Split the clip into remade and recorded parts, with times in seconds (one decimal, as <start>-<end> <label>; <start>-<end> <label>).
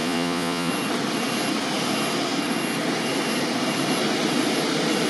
0.0-0.7 remade; 0.7-5.1 recorded